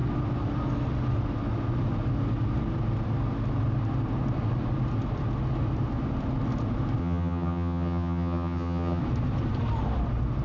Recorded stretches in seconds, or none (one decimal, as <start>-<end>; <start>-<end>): 0.0-7.0; 9.0-10.4